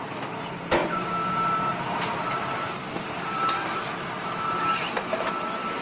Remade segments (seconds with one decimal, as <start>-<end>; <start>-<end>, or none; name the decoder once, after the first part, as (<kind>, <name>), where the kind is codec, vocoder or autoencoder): 0.8-4.3 (vocoder, BigVGAN v2)